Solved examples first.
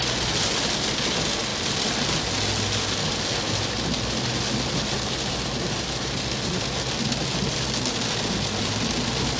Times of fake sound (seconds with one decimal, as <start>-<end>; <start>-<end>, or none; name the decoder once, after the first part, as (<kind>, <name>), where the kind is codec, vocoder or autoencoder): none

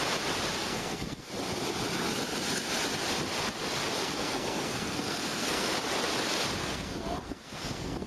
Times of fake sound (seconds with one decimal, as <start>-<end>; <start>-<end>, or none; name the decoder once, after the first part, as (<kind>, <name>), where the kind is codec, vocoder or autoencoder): 0.6-1.3 (codec, SNAC); 4.0-5.7; 6.6-8.1

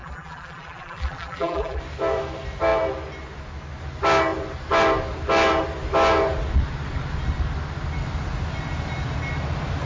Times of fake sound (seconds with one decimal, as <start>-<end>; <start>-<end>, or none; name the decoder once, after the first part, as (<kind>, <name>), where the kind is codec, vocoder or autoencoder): 0.0-1.8 (vocoder, BigVGAN v2)

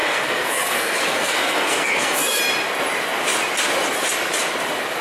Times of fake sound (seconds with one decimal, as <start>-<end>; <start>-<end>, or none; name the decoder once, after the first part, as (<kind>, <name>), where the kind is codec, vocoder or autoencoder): 0.0-2.4 (codec, SNAC)

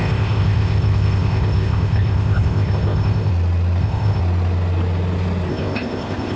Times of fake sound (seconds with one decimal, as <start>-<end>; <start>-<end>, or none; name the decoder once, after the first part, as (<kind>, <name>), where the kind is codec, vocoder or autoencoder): 0.0-3.3 (codec, ZipCodec); 3.8-4.2; 5.5-6.4